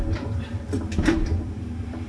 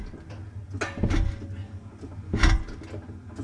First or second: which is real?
second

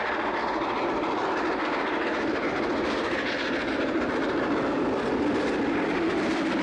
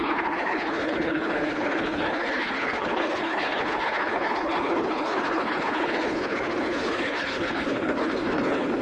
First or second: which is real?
first